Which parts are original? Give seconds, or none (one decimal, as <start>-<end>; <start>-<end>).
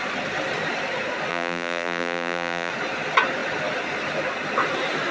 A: 0.0-1.3; 2.7-5.1